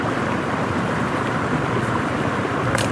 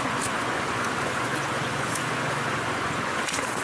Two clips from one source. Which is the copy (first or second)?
second